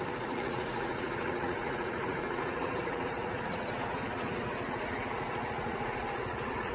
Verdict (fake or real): fake